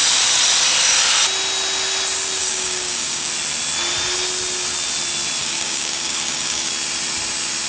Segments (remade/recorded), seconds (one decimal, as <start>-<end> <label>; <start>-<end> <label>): 0.0-2.4 recorded; 2.4-3.3 remade; 3.3-5.4 recorded; 5.4-6.7 remade; 6.7-7.7 recorded